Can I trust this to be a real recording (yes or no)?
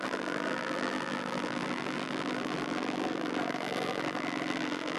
no